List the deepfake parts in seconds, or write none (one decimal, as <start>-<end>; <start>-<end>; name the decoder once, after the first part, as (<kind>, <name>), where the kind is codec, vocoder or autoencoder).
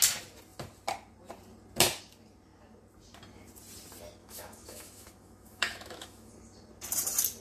4.2-6.3 (autoencoder, DAC-VAE)